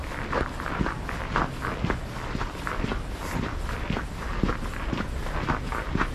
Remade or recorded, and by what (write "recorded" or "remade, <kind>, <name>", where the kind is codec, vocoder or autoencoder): recorded